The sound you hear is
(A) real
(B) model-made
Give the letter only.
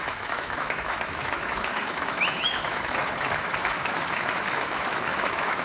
B